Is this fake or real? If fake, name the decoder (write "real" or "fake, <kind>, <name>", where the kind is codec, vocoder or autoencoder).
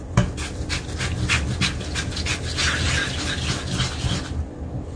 real